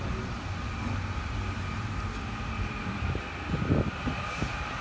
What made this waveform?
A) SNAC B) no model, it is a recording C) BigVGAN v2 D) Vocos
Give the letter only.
B